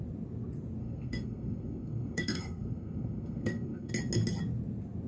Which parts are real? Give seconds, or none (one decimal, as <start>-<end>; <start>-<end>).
0.0-0.8; 3.9-5.1